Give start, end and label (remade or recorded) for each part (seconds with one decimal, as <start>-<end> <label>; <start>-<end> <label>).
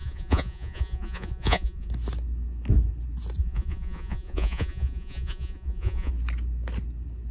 0.0-1.9 remade; 1.9-3.4 recorded; 3.4-6.1 remade; 6.1-7.3 recorded